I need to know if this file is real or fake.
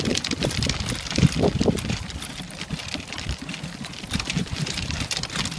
fake